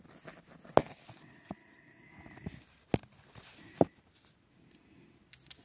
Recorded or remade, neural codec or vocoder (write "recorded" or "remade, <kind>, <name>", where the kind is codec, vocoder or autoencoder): recorded